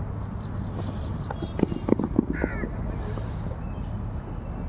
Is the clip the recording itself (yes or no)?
yes